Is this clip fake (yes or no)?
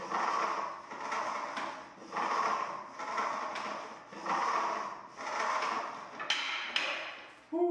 no